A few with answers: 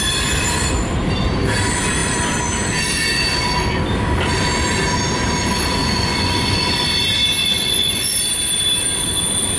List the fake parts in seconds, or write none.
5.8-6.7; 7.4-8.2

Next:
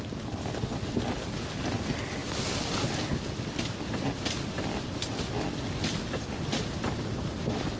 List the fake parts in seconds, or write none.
none

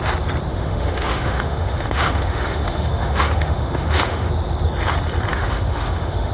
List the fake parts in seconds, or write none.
0.5-4.3; 5.3-6.3

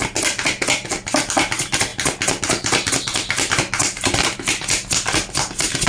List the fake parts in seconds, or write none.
1.9-2.9; 3.8-4.5